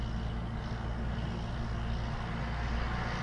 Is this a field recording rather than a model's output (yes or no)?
yes